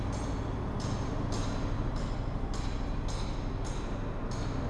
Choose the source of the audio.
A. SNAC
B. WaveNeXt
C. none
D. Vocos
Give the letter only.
C